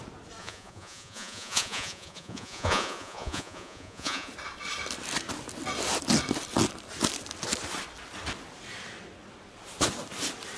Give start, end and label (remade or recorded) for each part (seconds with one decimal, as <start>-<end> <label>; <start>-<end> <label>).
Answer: 0.0-0.4 recorded; 0.4-4.3 remade; 4.3-10.6 recorded